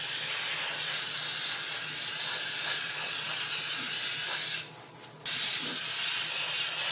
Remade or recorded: recorded